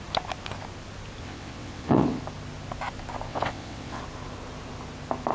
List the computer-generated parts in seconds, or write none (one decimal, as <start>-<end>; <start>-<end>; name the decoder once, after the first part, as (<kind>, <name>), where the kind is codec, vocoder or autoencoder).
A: 1.2-2.2 (vocoder, WaveNeXt); 3.3-4.0